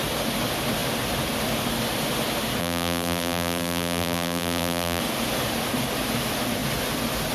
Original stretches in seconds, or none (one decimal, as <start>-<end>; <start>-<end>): 0.0-2.6; 5.0-7.3